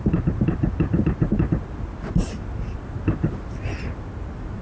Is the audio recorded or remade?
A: recorded